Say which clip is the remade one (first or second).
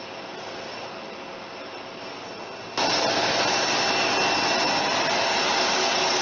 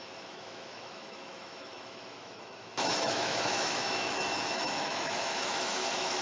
second